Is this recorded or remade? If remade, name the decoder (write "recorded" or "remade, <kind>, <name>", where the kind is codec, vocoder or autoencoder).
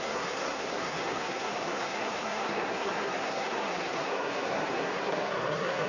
remade, codec, SNAC